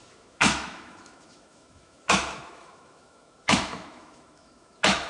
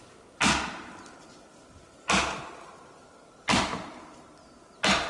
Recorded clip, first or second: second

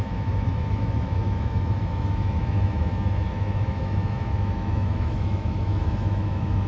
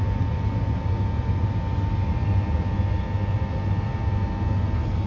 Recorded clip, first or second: second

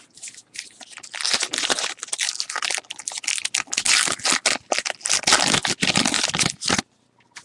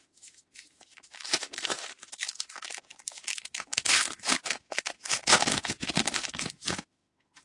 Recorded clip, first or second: first